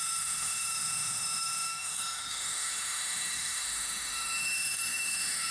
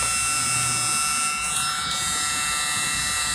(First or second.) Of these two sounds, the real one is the second